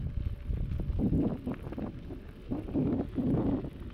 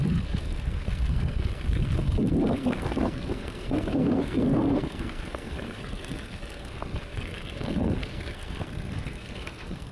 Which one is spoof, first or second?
second